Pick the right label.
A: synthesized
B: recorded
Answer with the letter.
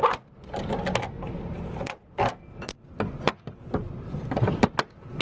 B